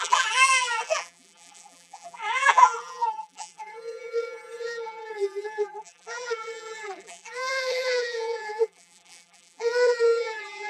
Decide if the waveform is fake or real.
fake